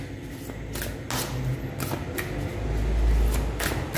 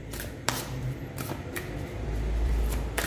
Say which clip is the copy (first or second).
second